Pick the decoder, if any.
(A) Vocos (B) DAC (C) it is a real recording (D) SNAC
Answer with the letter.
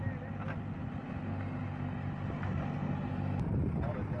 C